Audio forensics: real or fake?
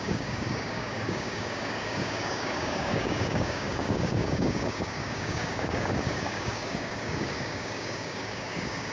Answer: fake